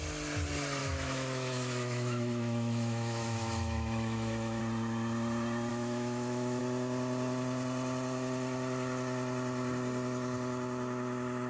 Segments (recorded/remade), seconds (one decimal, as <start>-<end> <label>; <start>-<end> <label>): 0.0-0.8 recorded; 0.8-4.6 remade; 4.6-5.7 recorded; 5.7-6.6 remade; 6.6-11.5 recorded